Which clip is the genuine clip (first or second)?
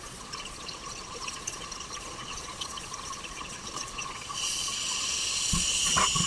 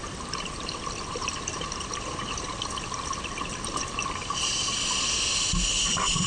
second